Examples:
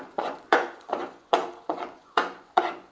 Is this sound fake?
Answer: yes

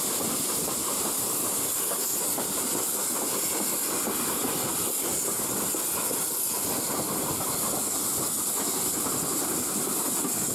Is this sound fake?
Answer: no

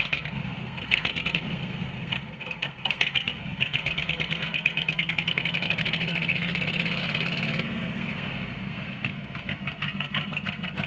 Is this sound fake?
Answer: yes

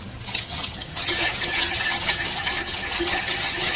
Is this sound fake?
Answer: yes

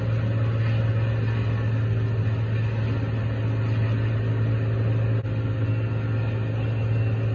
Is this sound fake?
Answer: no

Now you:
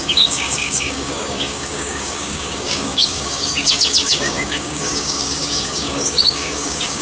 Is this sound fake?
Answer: yes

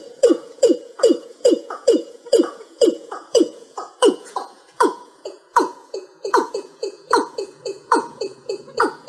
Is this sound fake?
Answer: yes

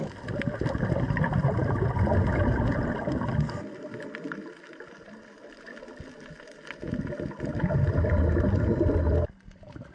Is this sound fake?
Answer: no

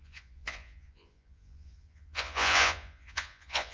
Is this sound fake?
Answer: yes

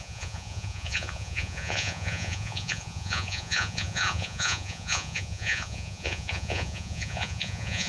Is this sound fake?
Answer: yes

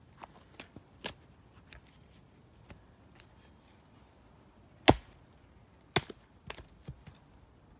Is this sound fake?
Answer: no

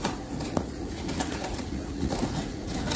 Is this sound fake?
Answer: yes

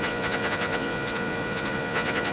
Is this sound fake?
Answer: yes